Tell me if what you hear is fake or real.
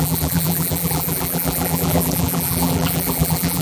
fake